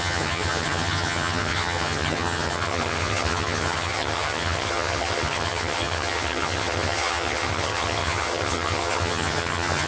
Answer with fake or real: fake